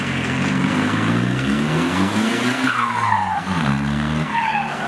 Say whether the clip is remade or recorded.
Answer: remade